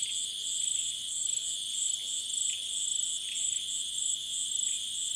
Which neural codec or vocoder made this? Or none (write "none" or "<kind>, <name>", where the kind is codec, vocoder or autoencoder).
none